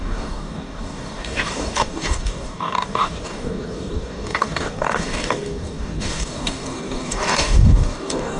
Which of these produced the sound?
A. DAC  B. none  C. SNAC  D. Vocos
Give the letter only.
A